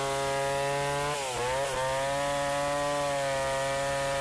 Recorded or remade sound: recorded